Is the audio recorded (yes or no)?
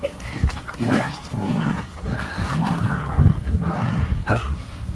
no